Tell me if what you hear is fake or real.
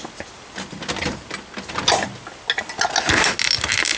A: real